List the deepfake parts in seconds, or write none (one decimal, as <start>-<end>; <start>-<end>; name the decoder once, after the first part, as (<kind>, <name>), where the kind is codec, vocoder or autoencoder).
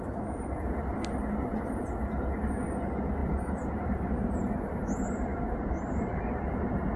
3.2-4.8 (vocoder, BigVGAN v2); 5.3-6.6